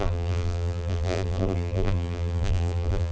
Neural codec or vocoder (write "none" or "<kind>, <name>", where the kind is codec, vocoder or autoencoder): vocoder, BigVGAN v2